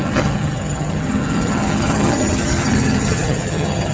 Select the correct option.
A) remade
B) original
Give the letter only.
A